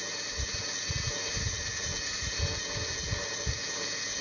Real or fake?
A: real